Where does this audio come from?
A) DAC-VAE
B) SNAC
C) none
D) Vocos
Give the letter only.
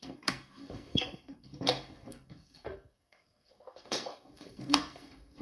B